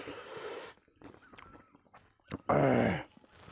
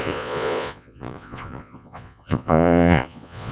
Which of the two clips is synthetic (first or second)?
second